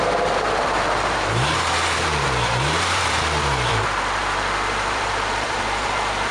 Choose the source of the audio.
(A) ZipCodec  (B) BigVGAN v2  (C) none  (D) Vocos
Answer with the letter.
B